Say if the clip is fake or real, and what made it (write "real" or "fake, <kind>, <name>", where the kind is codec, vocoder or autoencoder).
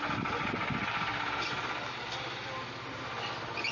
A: real